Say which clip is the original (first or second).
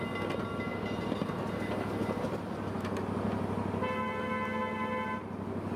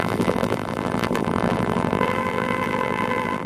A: first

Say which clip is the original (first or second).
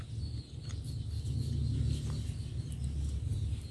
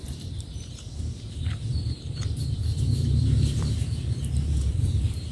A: first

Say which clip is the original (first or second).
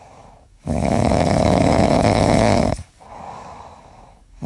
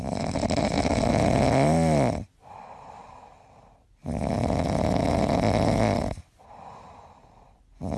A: second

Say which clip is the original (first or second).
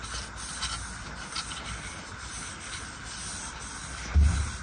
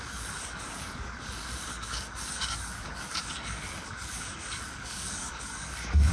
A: first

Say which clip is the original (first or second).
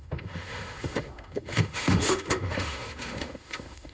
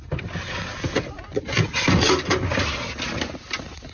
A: second